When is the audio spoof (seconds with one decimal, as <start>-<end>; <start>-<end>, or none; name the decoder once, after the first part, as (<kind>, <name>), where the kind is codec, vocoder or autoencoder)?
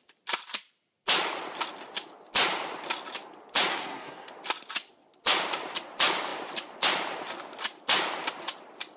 3.7-4.3 (codec, SNAC)